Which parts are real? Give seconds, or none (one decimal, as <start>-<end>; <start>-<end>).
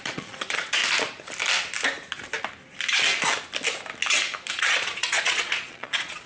0.8-4.5